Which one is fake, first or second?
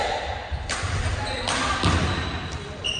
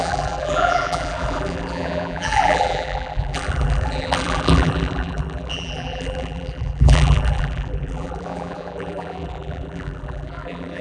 second